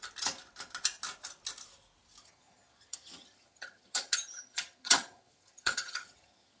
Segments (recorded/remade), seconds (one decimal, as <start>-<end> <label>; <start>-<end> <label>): 0.0-2.2 recorded; 2.2-6.6 remade